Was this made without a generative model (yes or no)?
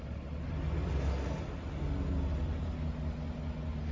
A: yes